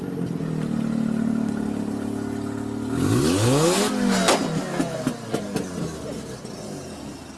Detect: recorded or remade recorded